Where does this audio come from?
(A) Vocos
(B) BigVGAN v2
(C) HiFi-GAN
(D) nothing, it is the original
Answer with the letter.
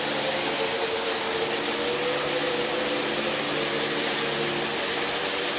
D